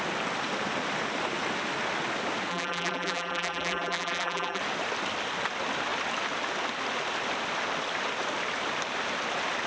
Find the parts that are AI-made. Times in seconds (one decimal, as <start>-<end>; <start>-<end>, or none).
2.5-4.6